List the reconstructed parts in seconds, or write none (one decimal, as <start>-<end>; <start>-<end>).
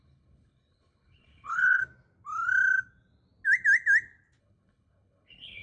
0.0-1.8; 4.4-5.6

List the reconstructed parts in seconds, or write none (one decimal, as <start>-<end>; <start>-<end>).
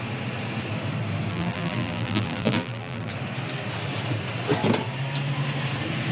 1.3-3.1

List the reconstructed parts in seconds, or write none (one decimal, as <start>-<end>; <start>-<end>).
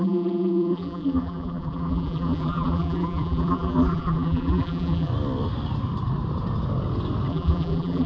0.0-5.1; 7.3-8.1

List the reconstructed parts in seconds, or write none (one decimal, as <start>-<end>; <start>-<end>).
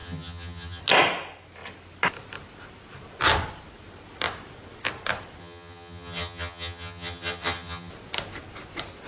0.0-0.8; 5.4-7.9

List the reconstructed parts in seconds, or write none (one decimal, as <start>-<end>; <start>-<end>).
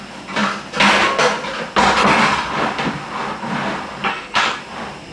4.1-4.6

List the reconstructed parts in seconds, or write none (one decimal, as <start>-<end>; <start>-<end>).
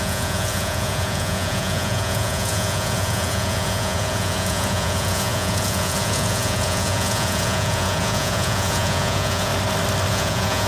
0.0-9.5; 10.1-10.7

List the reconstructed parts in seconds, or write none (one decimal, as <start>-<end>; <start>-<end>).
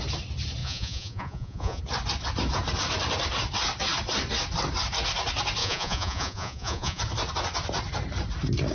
0.6-1.8; 5.6-7.0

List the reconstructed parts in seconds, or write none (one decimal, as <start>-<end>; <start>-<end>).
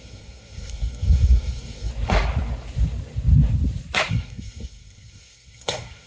0.0-1.9; 4.1-6.1